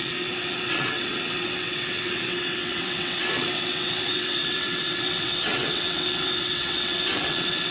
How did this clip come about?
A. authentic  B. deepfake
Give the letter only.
B